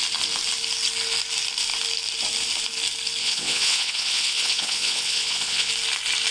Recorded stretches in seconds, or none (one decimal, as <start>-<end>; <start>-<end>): 0.0-3.2; 5.7-6.3